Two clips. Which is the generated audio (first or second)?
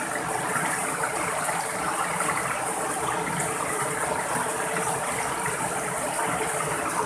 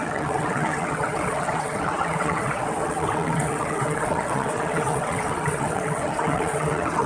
second